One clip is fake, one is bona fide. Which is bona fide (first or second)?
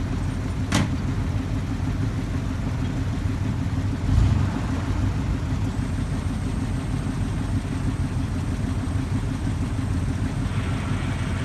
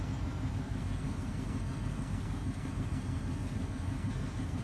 first